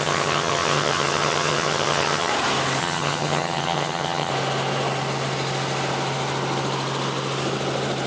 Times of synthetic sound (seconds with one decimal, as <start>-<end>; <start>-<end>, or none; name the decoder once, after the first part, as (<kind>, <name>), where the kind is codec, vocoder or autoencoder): 0.0-2.3 (vocoder, HiFi-GAN); 2.8-4.3